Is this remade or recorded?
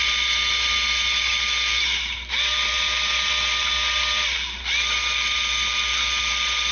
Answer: recorded